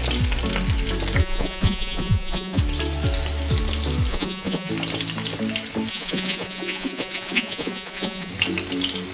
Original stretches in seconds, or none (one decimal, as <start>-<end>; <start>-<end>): 0.0-1.2; 2.6-4.1; 4.7-5.9; 8.3-9.1